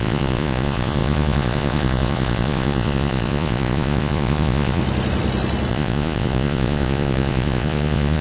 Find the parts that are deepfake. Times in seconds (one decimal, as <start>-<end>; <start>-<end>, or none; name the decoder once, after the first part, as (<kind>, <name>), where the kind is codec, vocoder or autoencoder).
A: 0.0-4.8 (vocoder, Vocos); 5.7-8.2